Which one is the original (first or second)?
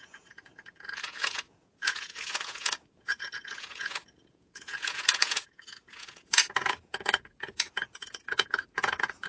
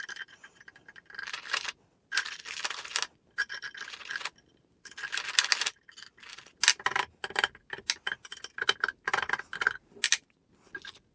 second